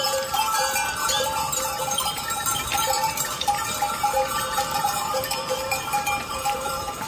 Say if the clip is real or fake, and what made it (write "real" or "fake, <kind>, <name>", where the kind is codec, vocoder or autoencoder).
fake, vocoder, BigVGAN v2